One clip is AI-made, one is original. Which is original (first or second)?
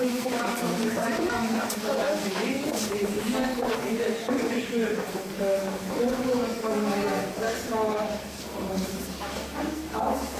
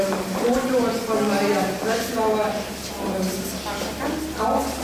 second